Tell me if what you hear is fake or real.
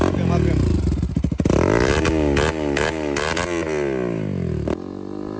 real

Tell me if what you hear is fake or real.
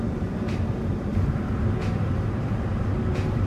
fake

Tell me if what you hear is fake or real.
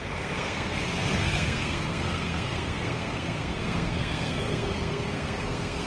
fake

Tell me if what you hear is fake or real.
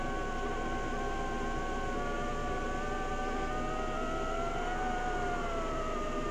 real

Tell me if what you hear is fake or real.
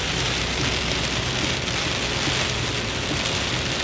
real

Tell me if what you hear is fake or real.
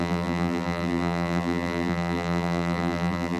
fake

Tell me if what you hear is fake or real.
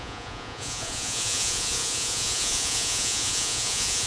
fake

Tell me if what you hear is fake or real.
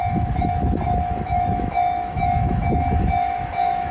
fake